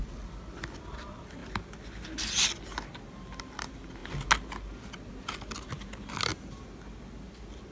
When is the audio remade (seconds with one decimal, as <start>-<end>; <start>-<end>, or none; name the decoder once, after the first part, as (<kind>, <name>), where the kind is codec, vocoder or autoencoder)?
none